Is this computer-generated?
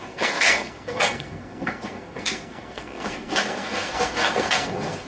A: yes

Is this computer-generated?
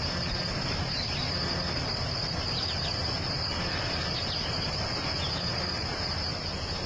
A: no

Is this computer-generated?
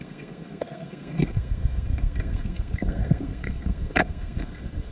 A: yes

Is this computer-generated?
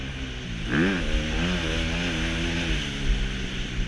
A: no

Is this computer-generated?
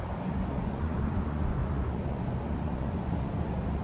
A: yes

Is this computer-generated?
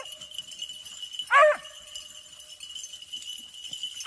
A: no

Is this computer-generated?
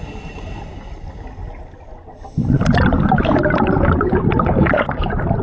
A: no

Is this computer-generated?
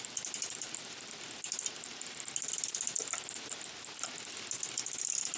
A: no